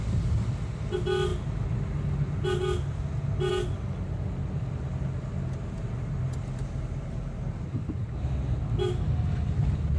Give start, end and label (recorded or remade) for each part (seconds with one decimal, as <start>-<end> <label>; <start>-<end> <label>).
0.0-10.0 recorded